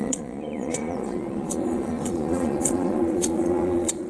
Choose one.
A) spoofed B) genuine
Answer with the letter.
A